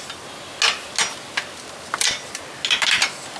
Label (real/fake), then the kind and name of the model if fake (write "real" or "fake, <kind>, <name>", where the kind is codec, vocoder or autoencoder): real